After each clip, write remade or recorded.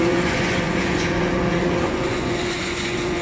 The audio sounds remade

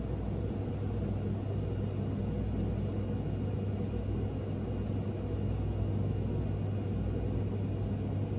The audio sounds recorded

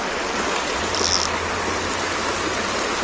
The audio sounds recorded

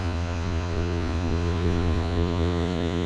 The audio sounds remade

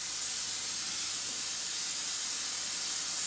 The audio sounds recorded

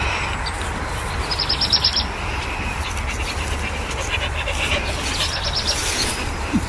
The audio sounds recorded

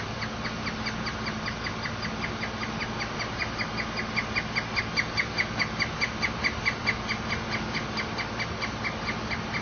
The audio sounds recorded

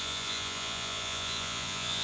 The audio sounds remade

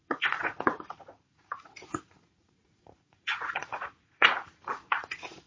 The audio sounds remade